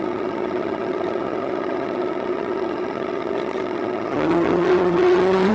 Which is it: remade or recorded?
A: remade